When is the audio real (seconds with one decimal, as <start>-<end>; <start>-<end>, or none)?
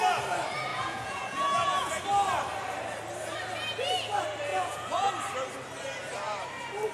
0.0-0.7; 2.0-4.5; 5.1-6.9